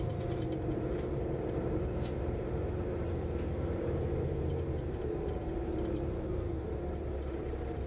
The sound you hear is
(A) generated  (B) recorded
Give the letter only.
A